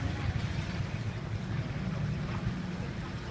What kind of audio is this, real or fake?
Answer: real